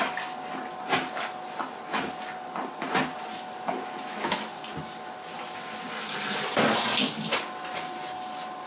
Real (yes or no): yes